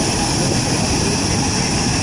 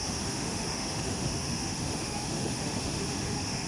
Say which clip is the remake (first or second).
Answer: second